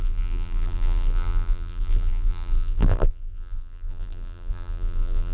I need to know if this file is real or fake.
fake